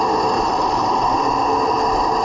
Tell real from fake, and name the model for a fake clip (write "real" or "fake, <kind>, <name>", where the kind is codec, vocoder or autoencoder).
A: real